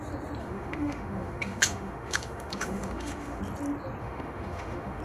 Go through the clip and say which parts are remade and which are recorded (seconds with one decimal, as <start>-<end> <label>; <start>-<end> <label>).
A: 0.0-0.4 recorded; 0.4-3.4 remade; 3.4-4.0 recorded; 4.0-5.0 remade

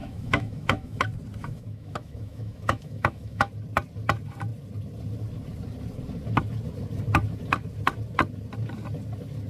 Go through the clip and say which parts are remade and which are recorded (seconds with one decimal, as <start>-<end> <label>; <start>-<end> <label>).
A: 0.0-1.0 remade; 1.0-1.4 recorded; 1.4-3.5 remade; 3.5-9.5 recorded

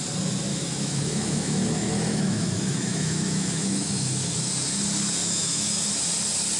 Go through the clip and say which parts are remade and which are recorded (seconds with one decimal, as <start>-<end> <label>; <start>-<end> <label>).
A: 0.0-0.5 recorded; 0.5-4.5 remade; 4.5-5.2 recorded; 5.2-5.9 remade; 5.9-6.6 recorded

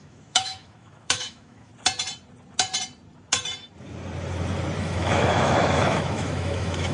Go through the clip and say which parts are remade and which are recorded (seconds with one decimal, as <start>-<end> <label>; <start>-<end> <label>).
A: 0.0-1.7 remade; 1.7-4.8 recorded; 4.8-6.9 remade

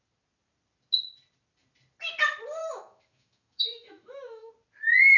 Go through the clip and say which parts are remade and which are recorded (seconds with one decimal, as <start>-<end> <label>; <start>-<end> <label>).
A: 0.0-2.6 recorded; 2.6-4.5 remade; 4.5-5.2 recorded